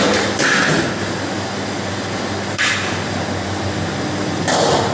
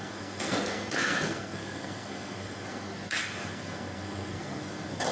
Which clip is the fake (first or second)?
second